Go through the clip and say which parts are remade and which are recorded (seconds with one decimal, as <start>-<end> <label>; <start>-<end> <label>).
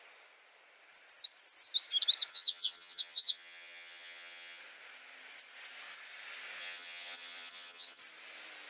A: 0.0-2.3 recorded; 2.3-4.6 remade; 4.6-6.6 recorded; 6.6-8.0 remade; 8.0-8.7 recorded